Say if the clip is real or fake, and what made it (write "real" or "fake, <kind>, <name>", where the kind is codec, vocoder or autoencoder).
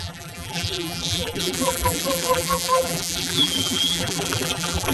fake, vocoder, BigVGAN v2